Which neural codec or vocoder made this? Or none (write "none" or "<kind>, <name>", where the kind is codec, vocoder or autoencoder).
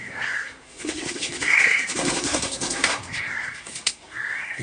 codec, SNAC